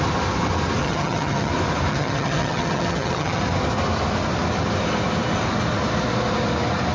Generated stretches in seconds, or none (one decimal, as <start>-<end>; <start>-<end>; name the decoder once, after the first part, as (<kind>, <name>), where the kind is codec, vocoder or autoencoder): 0.8-1.5 (vocoder, HiFi-GAN); 1.9-3.4